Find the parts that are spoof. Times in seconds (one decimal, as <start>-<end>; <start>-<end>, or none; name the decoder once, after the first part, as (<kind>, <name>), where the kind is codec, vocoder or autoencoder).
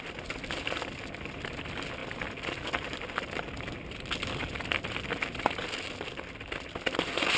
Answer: none